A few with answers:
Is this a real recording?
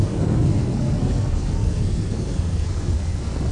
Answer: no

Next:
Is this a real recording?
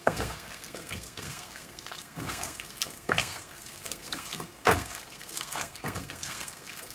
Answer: no